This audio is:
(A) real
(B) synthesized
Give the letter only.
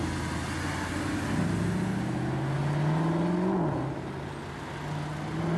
A